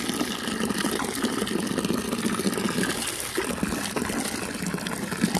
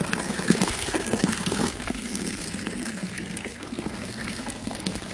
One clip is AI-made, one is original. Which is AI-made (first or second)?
second